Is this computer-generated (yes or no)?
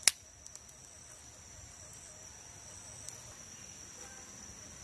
no